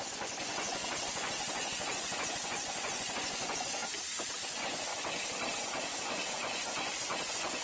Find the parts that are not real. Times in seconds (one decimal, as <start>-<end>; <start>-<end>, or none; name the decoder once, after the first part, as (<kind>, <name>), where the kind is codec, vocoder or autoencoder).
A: 0.0-3.8 (vocoder, Vocos); 4.5-4.9; 5.5-7.6